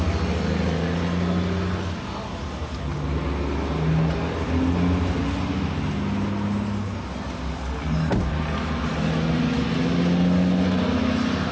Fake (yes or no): no